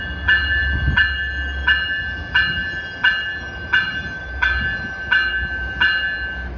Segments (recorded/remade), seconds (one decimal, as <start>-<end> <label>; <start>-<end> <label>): 0.0-6.6 recorded